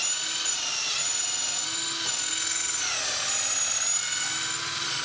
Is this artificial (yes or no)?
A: no